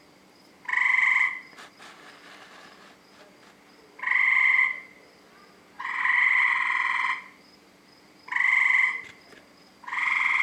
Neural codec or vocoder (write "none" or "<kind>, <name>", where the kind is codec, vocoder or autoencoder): none